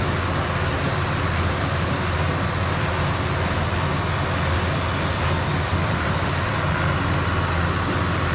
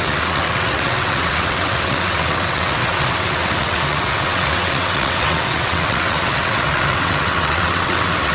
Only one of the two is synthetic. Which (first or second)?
second